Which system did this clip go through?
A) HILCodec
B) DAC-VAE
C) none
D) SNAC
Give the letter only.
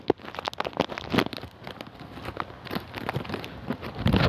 C